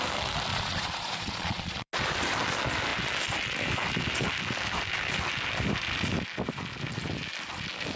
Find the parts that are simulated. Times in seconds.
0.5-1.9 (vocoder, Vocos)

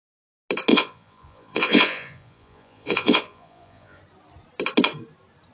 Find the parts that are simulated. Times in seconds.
0.7-4.0 (vocoder, Vocos)

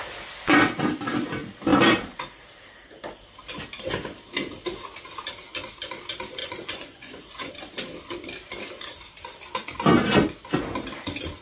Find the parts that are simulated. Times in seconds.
6.4-7.5 (vocoder, Vocos)

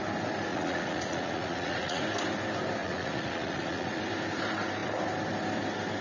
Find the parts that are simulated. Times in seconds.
0.5-2.0 (vocoder, Vocos); 2.8-4.0

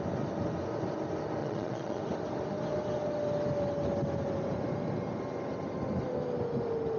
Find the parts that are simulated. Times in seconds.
1.4-2.0 (vocoder, Vocos)